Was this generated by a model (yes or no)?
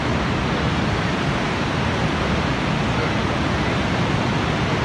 no